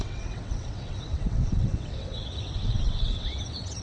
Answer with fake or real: fake